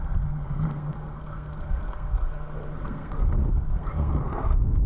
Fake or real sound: fake